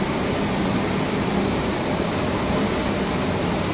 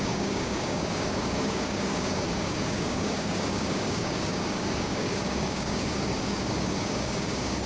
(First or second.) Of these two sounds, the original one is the first